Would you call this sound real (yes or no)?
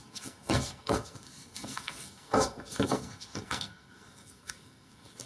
no